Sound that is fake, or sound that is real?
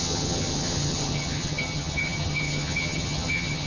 fake